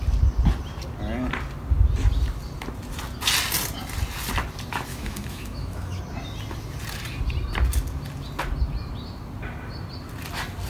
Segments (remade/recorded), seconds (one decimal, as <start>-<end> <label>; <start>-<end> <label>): 0.0-4.9 recorded; 4.9-6.0 remade; 6.0-10.7 recorded